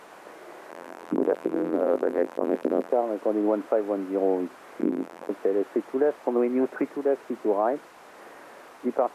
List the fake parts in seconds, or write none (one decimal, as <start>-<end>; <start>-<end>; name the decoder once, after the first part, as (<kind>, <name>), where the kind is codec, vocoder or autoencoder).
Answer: 0.7-2.9 (vocoder, BigVGAN v2); 4.8-5.3